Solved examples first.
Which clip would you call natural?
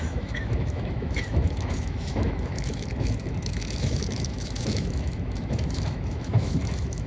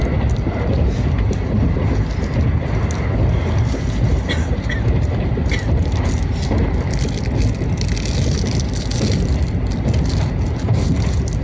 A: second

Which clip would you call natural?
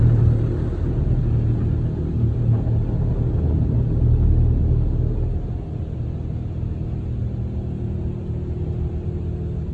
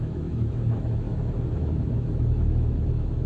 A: first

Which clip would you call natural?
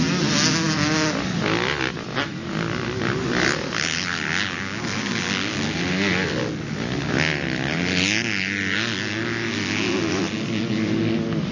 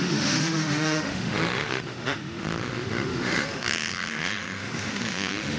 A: first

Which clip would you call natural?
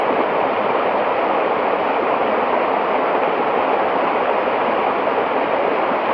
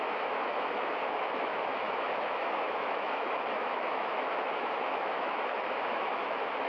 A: first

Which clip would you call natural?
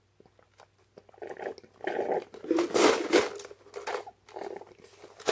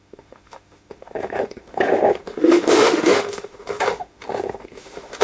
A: first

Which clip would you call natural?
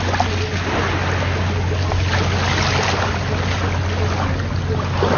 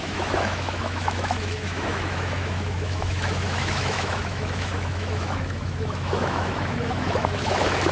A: first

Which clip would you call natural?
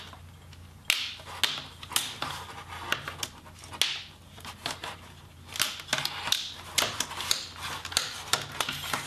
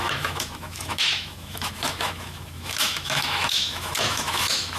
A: first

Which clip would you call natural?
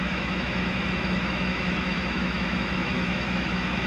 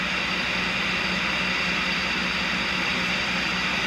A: second